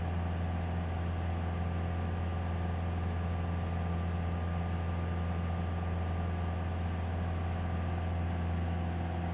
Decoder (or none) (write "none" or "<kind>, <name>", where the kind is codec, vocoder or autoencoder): none